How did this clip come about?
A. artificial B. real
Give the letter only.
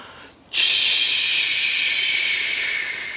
B